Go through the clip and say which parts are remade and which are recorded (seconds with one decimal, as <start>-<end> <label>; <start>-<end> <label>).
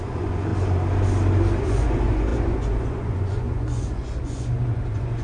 0.0-0.5 remade; 0.5-1.6 recorded; 1.6-5.2 remade